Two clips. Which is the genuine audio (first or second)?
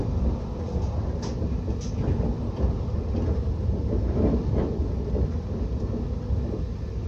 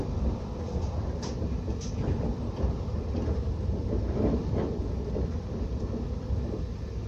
first